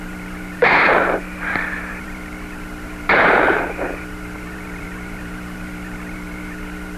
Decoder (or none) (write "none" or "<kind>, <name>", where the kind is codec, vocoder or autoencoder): vocoder, BigVGAN v2